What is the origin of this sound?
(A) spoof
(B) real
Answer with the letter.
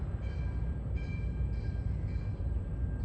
B